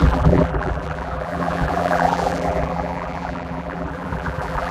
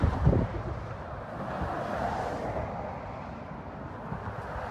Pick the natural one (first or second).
second